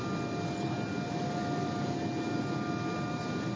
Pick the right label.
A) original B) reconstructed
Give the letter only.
A